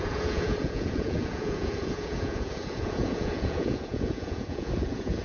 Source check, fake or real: fake